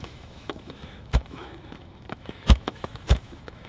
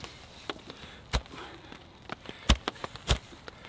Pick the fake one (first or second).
first